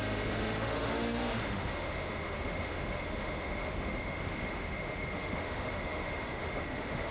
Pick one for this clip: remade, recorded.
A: remade